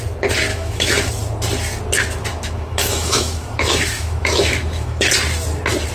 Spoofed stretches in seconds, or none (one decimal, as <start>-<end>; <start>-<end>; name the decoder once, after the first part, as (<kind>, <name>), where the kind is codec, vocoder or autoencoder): 0.5-1.1 (autoencoder, DAC-VAE); 2.3-5.1